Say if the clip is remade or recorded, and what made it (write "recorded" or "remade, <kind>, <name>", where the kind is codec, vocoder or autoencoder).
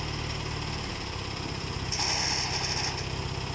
recorded